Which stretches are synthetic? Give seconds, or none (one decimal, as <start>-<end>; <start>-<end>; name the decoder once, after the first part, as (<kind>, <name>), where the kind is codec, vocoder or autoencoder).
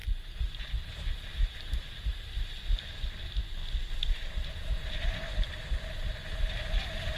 0.0-2.3 (vocoder, BigVGAN v2); 6.2-7.2